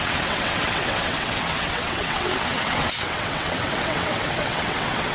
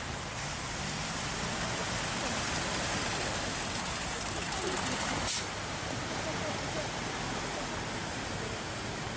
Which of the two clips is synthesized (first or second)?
first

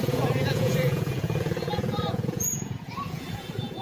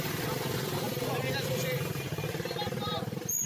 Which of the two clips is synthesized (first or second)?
first